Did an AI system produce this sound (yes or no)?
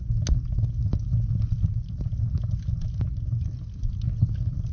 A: no